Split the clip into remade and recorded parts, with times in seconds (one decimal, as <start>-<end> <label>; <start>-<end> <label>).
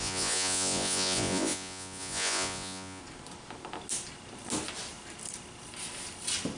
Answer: 0.0-3.0 remade; 3.0-6.6 recorded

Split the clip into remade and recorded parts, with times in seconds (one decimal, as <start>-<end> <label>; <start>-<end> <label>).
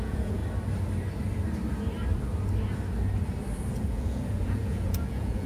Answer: 0.0-0.4 remade; 0.4-3.7 recorded; 3.7-5.5 remade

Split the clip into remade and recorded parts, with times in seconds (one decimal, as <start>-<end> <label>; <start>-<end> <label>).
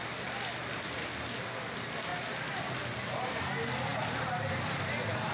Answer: 0.0-5.3 recorded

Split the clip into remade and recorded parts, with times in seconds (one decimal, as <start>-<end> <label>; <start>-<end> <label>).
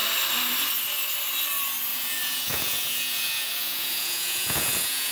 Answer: 0.0-1.9 recorded; 1.9-5.1 remade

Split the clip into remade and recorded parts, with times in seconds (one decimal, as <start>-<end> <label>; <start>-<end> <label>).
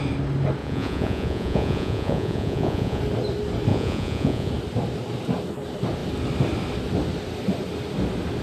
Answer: 0.0-0.6 recorded; 0.6-3.0 remade; 3.0-3.7 recorded; 3.7-4.5 remade; 4.5-8.4 recorded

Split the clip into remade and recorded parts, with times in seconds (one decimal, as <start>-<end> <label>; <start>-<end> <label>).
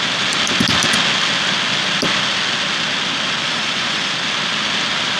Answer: 0.0-3.4 recorded; 3.4-4.1 remade; 4.1-5.2 recorded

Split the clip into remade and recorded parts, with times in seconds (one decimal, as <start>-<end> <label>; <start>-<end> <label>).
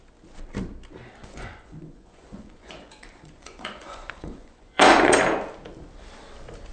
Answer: 0.0-1.2 recorded; 1.2-5.2 remade; 5.2-6.7 recorded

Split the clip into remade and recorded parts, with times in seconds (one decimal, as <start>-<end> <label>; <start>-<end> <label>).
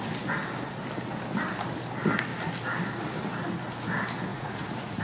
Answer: 0.0-4.3 recorded; 4.3-5.0 remade